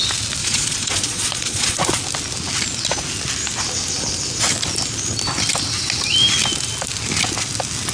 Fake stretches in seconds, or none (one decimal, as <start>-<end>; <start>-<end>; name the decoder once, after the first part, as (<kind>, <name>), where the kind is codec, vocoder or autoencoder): 0.4-2.0 (vocoder, Vocos)